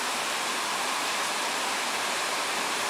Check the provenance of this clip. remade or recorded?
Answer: remade